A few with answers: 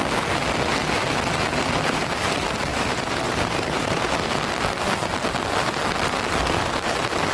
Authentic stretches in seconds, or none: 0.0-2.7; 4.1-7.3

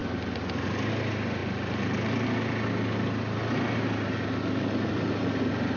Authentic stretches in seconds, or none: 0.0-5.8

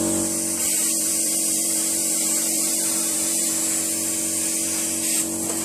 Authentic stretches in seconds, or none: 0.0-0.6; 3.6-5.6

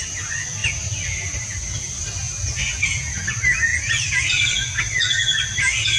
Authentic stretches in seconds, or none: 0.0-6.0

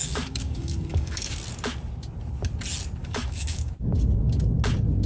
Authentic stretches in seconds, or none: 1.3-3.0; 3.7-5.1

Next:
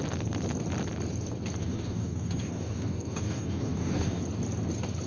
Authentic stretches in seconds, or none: 0.0-1.6; 4.2-5.1

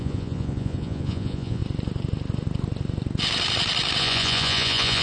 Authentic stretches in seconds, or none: 1.6-4.0